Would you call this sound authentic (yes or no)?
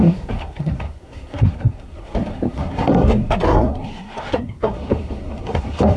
no